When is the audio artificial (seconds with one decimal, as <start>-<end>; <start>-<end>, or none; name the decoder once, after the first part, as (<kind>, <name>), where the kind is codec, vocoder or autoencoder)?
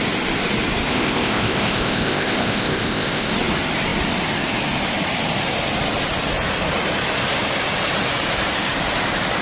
0.9-3.3 (codec, ZipCodec)